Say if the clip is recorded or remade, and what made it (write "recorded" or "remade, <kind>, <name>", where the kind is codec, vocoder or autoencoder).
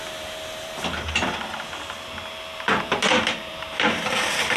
remade, vocoder, BigVGAN v2